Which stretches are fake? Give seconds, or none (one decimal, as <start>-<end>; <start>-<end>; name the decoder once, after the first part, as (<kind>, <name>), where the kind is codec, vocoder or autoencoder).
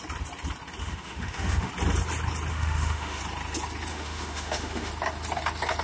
0.8-1.7 (autoencoder, DAC-VAE); 2.5-3.2; 3.9-4.9